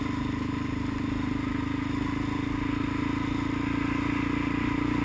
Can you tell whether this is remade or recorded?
recorded